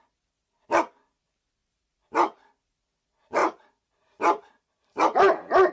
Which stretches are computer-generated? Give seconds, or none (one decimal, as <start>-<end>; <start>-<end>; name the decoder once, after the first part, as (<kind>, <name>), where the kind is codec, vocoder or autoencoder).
1.6-2.4 (vocoder, BigVGAN v2); 3.4-5.7